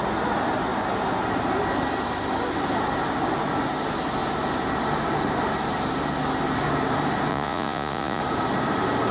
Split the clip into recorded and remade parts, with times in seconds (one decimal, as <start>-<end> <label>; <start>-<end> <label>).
0.0-7.3 recorded; 7.3-8.2 remade; 8.2-9.1 recorded